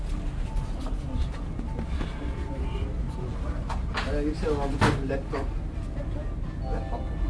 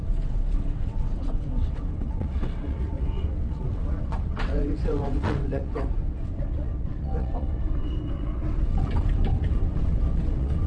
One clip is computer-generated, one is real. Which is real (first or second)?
first